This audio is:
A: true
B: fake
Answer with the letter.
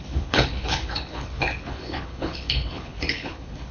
B